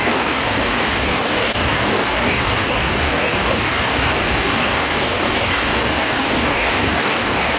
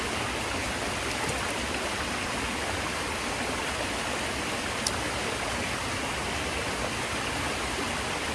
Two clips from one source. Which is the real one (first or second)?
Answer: second